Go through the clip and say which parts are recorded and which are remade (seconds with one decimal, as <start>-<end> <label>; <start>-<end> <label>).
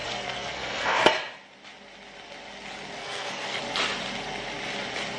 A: 0.0-1.0 remade; 1.0-3.0 recorded; 3.0-3.6 remade; 3.6-5.2 recorded